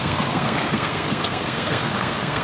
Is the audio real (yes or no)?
no